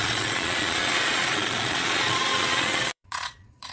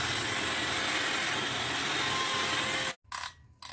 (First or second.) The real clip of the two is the second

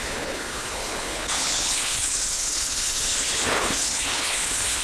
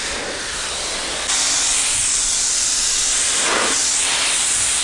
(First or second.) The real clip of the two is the second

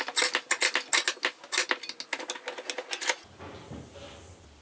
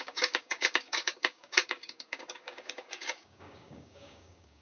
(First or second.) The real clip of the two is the first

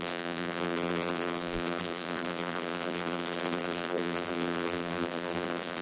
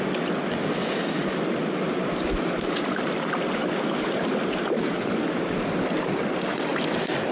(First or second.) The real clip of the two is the second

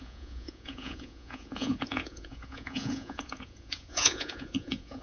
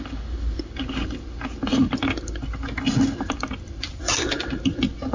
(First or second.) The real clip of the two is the second